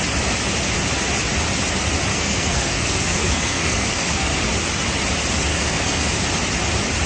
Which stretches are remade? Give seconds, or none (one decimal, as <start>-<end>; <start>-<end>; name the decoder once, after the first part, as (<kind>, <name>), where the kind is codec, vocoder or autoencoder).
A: 2.1-4.4 (codec, SNAC); 5.5-6.1